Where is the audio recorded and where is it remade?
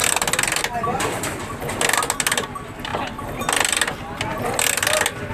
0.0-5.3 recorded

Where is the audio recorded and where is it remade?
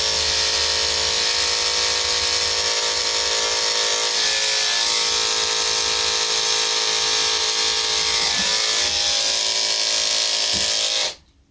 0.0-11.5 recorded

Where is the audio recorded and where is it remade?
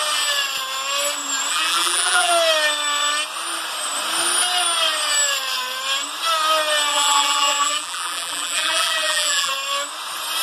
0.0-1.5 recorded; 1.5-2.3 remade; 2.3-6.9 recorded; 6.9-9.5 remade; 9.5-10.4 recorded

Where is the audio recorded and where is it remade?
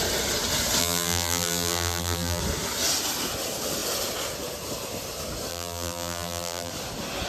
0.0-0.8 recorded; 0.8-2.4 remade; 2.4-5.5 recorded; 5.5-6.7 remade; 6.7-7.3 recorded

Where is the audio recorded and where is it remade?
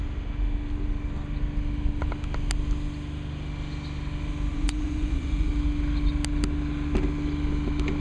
0.0-4.5 recorded; 4.5-5.5 remade; 5.5-8.0 recorded